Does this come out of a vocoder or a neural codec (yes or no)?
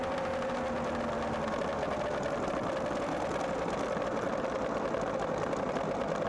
no